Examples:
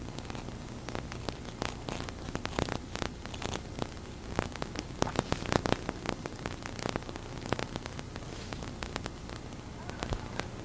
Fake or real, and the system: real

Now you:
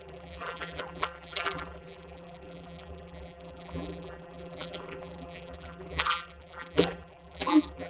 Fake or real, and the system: fake, vocoder, BigVGAN v2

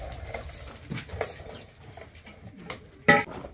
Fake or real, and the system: real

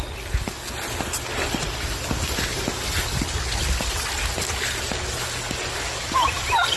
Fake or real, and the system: real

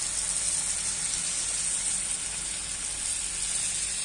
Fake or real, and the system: real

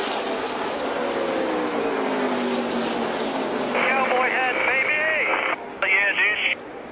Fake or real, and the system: real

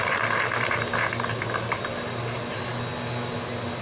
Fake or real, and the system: real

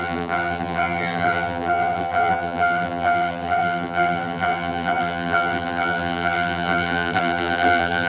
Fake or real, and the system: fake, vocoder, BigVGAN v2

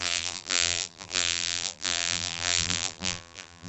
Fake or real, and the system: fake, vocoder, BigVGAN v2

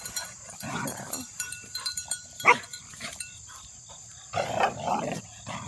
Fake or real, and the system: fake, vocoder, BigVGAN v2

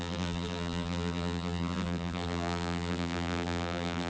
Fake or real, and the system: fake, vocoder, BigVGAN v2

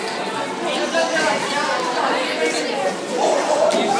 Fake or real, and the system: real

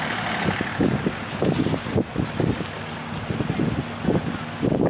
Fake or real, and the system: real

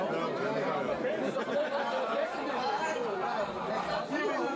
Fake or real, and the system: real